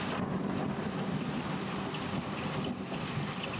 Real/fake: real